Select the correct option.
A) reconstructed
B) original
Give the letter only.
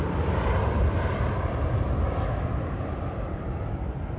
B